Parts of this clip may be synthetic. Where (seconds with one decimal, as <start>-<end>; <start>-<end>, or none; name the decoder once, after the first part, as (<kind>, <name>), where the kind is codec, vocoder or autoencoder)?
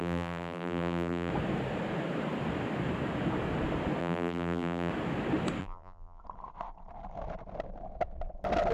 0.0-1.3 (vocoder, BigVGAN v2); 4.0-4.9; 5.6-6.2